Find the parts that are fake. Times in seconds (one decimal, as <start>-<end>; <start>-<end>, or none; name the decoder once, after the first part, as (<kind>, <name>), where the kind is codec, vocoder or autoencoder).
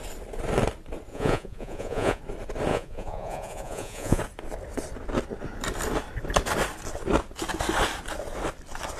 1.1-2.2 (vocoder, Vocos); 2.7-4.2